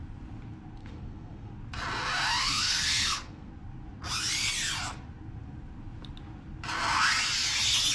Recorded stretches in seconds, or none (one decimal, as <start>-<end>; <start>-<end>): 0.0-0.8; 1.5-2.4; 3.5-7.9